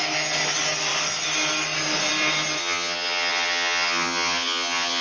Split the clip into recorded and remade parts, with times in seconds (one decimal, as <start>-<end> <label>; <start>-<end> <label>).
0.0-2.6 recorded; 2.6-5.0 remade